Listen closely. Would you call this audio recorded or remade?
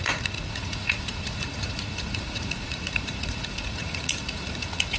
remade